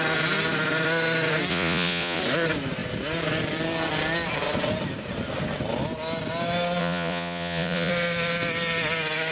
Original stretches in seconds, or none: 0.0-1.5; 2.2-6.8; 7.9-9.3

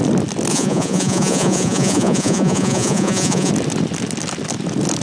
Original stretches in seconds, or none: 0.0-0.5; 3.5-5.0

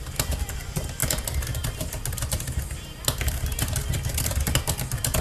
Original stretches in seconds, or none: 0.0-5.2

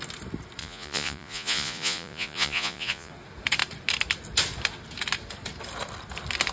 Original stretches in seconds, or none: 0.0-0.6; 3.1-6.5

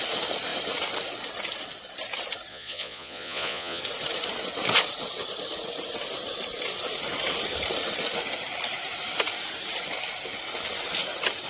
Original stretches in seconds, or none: 0.0-2.5; 3.8-11.5

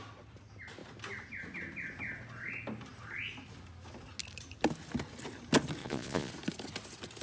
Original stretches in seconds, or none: 0.0-5.8; 6.3-7.2